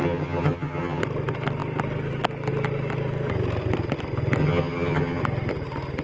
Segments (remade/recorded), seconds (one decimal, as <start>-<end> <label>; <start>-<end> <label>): 0.0-1.0 remade; 1.0-4.4 recorded; 4.4-5.2 remade; 5.2-6.0 recorded